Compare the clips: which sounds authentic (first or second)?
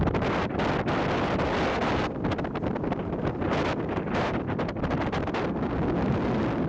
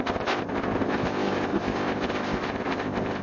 first